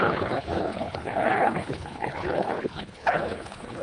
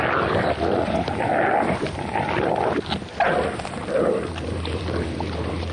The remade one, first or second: first